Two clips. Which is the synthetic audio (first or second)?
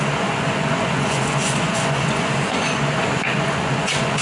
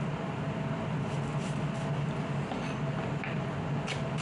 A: first